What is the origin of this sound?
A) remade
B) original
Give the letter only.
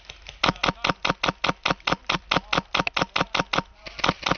B